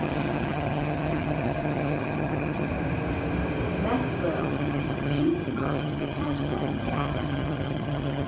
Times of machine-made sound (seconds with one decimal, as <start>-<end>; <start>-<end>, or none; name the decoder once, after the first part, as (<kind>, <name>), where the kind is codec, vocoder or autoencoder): 0.0-2.7 (vocoder, HiFi-GAN); 4.4-8.3